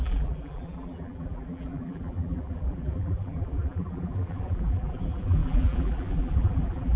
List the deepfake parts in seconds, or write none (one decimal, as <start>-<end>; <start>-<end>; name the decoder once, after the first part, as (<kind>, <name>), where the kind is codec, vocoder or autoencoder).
0.0-7.0 (vocoder, BigVGAN v2)